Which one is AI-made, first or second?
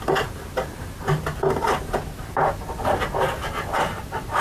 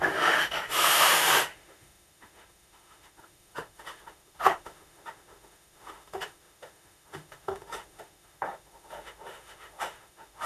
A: second